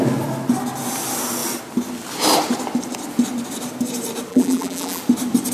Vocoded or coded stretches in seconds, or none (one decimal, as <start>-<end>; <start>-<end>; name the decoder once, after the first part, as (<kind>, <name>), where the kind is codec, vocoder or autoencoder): 4.3-5.0 (vocoder, BigVGAN v2)